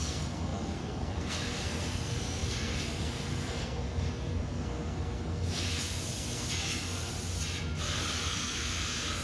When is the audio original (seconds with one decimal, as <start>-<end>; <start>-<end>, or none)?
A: 7.1-7.8